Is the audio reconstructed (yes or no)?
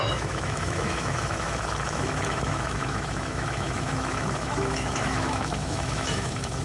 yes